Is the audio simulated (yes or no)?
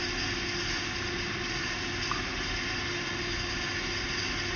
no